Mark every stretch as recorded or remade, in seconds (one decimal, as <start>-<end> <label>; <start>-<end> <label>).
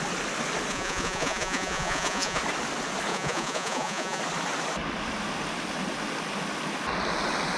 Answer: 0.0-0.7 recorded; 0.7-2.4 remade; 2.4-3.1 recorded; 3.1-4.2 remade; 4.2-7.6 recorded